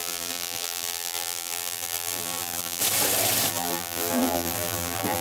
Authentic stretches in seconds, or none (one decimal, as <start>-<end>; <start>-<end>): 2.8-3.5